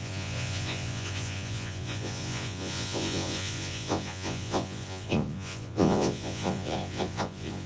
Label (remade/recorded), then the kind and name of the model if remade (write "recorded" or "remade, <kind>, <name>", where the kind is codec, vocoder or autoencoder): remade, vocoder, Vocos